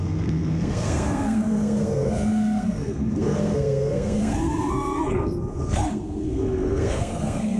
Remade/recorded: remade